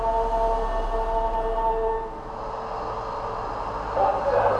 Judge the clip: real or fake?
real